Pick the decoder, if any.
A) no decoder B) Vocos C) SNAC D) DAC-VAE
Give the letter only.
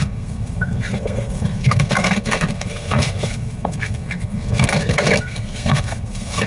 C